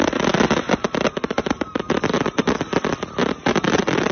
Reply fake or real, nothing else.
real